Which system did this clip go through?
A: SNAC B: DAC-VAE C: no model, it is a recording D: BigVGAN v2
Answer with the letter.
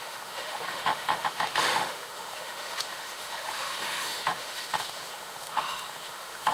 B